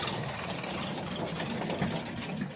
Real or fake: real